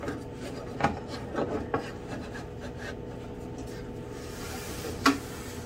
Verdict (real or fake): real